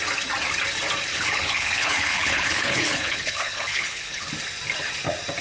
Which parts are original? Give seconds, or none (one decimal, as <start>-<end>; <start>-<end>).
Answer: 0.0-1.1; 4.3-5.4